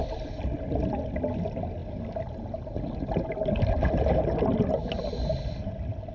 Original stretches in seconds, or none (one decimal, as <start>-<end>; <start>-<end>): 0.0-6.1